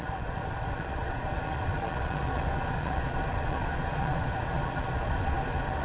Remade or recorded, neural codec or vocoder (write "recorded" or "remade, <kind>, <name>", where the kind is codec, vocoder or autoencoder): remade, vocoder, Vocos